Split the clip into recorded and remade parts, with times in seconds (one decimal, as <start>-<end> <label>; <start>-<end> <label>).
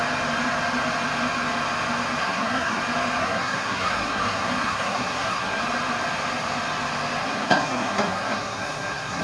0.0-2.2 recorded; 2.2-2.8 remade; 2.8-3.2 recorded; 3.2-5.6 remade; 5.6-7.2 recorded; 7.2-9.2 remade